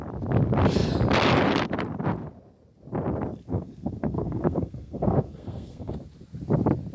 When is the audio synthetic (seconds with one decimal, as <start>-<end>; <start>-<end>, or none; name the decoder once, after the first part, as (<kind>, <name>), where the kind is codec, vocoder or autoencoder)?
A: 3.5-5.9 (codec, SNAC)